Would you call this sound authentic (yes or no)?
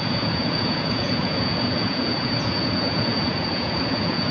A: no